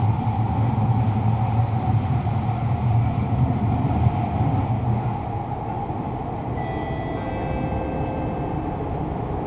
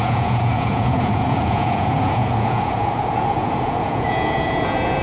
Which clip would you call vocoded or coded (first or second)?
second